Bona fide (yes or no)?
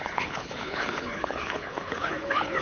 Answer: no